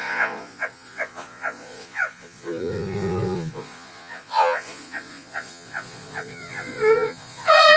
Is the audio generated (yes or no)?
yes